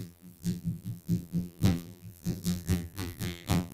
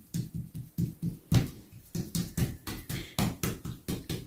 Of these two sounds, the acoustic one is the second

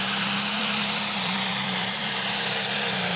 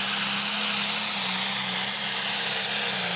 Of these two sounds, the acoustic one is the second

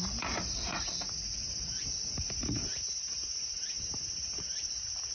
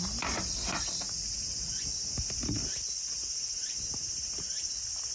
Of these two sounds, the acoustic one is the second